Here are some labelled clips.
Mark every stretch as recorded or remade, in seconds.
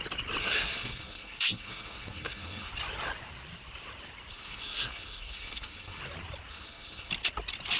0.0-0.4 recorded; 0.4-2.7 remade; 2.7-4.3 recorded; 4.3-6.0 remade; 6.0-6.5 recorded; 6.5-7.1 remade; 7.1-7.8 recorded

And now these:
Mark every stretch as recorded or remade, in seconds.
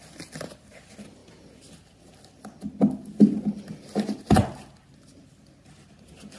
0.0-6.4 recorded